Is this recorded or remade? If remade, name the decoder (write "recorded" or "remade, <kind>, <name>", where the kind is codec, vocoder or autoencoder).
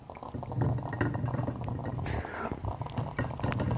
recorded